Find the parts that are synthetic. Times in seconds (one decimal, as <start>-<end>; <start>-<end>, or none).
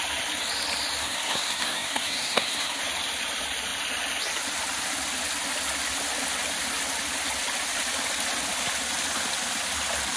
1.0-2.8